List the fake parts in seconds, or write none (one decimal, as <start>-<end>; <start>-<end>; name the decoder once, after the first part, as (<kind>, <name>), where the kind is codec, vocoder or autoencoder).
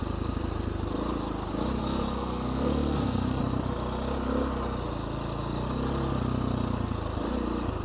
1.8-3.4 (codec, SNAC)